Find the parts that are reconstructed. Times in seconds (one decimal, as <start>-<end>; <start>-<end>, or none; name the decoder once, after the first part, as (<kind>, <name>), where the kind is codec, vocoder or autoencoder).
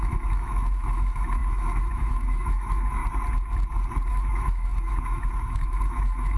0.0-3.0 (autoencoder, DAC-VAE); 4.1-6.4